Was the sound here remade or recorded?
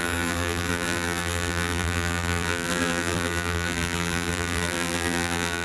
remade